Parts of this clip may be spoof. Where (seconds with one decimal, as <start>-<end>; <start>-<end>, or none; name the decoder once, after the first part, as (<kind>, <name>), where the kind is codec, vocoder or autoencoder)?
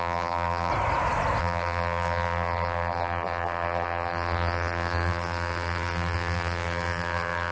0.0-0.7 (vocoder, BigVGAN v2); 1.4-7.5